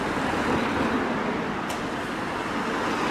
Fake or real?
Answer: real